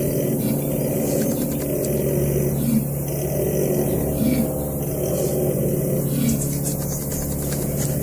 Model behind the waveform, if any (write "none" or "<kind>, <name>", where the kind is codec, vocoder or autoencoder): none